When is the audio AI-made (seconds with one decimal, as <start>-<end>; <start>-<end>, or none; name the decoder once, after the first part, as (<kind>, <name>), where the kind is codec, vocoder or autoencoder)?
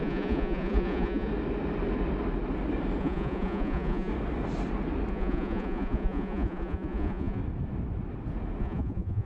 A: 0.0-1.3 (vocoder, Vocos); 3.0-4.1; 5.1-7.4; 8.6-9.2